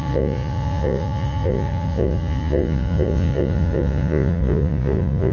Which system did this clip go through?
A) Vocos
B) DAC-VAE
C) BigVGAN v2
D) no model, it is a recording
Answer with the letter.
A